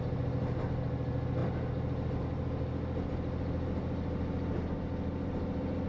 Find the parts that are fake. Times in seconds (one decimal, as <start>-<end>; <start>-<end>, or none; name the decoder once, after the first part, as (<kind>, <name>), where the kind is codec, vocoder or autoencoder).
none